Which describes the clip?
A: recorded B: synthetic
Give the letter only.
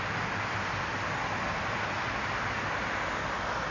A